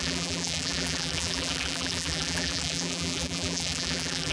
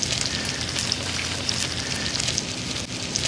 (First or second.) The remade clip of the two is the first